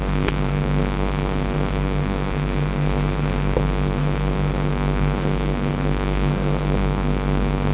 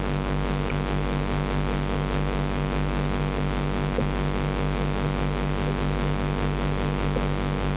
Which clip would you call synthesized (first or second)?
first